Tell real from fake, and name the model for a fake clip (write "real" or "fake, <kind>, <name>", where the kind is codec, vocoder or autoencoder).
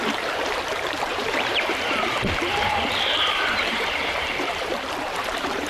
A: fake, vocoder, BigVGAN v2